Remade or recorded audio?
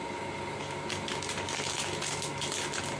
recorded